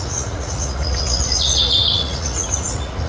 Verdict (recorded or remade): remade